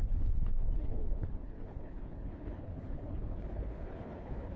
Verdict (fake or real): fake